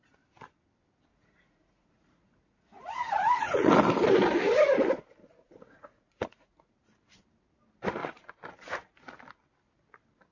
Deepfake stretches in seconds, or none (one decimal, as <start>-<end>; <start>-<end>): 1.1-3.7; 5.2-6.7